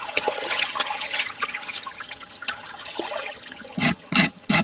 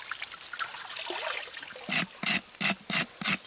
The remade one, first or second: first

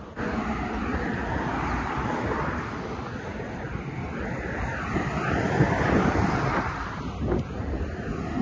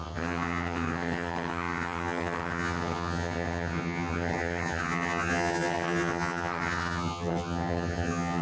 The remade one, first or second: second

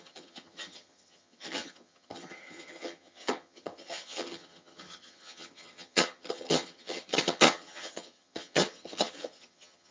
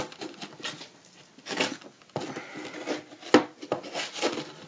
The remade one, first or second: first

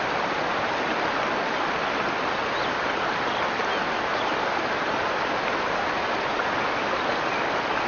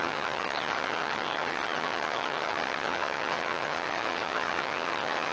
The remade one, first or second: second